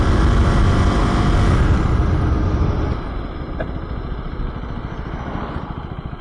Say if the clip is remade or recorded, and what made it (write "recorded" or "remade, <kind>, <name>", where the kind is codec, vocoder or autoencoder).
recorded